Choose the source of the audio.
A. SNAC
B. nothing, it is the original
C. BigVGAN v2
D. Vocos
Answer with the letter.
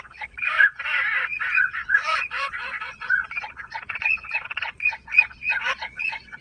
D